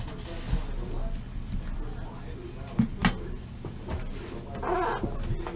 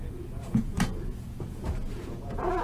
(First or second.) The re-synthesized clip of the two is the second